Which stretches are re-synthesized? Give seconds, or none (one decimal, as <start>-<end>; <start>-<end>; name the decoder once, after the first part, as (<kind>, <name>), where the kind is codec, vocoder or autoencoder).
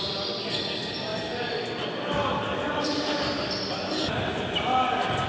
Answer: none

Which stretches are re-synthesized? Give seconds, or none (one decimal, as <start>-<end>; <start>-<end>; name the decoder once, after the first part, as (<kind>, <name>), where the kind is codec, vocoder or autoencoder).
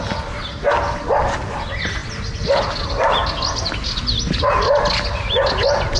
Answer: none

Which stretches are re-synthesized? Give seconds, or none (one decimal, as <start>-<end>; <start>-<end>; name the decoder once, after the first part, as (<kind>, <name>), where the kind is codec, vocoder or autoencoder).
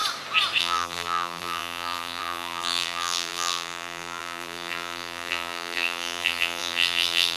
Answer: 0.6-7.4 (vocoder, BigVGAN v2)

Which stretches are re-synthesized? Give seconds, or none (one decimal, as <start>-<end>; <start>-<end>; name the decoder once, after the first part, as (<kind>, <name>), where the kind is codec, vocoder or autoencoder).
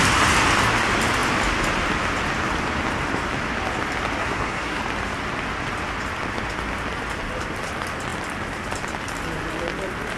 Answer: 4.2-4.8 (codec, SNAC)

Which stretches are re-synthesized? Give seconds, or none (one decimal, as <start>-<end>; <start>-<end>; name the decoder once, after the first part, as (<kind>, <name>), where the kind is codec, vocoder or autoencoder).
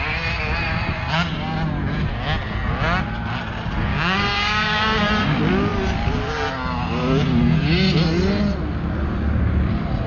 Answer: 3.9-5.0 (codec, DAC)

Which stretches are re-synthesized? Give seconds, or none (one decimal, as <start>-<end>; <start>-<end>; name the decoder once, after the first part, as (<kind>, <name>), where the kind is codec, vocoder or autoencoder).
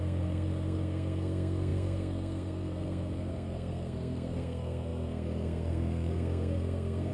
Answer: 0.0-7.1 (codec, SNAC)